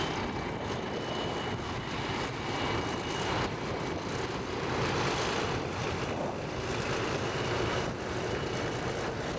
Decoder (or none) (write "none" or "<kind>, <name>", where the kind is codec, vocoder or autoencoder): vocoder, BigVGAN v2